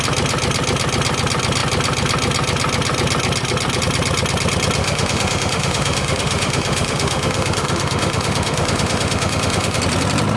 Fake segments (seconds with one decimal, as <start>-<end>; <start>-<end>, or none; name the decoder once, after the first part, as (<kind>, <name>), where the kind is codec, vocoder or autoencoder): 4.8-9.8 (autoencoder, DAC-VAE)